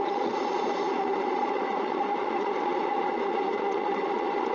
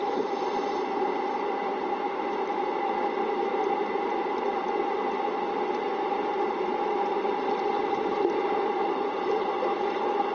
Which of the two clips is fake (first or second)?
first